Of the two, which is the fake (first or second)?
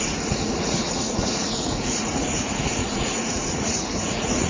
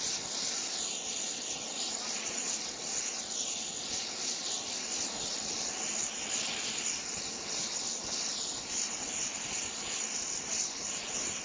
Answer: first